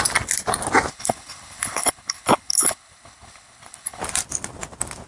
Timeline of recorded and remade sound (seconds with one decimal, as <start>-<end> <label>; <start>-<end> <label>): 0.0-0.9 recorded; 0.9-4.0 remade; 4.0-5.1 recorded